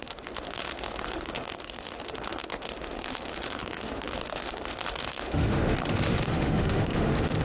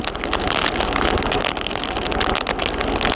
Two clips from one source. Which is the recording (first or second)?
second